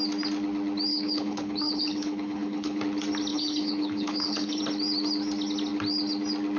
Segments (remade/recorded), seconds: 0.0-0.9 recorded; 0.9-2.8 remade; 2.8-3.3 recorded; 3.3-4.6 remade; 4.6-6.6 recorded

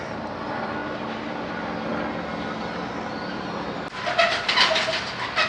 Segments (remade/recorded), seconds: 0.0-5.5 recorded

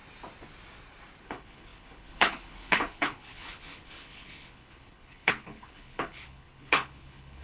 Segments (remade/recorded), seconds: 0.0-1.2 recorded; 1.2-7.4 remade